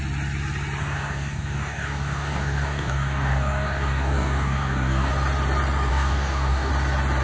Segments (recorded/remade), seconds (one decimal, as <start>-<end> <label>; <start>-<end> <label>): 0.0-0.8 recorded; 0.8-5.1 remade; 5.1-5.9 recorded; 5.9-6.7 remade; 6.7-7.2 recorded